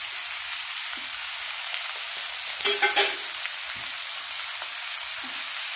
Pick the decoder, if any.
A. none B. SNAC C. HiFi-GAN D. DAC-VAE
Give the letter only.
A